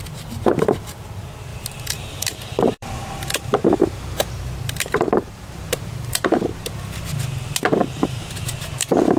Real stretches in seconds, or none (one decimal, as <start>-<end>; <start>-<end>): 0.0-1.5; 6.5-7.8; 8.5-9.2